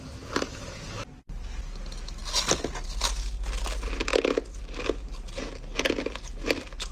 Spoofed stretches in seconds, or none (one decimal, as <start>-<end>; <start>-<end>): none